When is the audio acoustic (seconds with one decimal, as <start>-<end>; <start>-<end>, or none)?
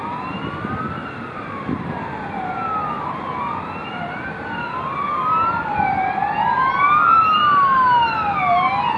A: 0.0-9.0